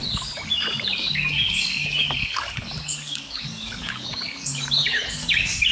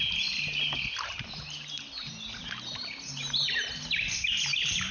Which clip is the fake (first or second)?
first